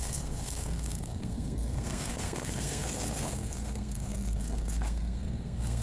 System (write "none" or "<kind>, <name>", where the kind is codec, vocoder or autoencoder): codec, SNAC